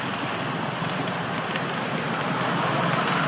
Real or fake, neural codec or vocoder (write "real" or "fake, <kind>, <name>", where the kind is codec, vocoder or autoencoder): real